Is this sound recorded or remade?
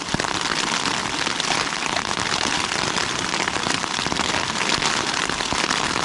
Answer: recorded